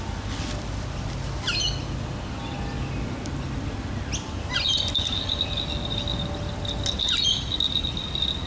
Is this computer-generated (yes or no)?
no